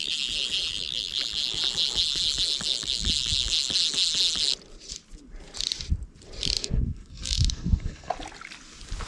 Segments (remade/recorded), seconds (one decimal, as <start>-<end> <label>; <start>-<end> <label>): 0.0-6.6 recorded; 6.6-8.1 remade; 8.1-9.1 recorded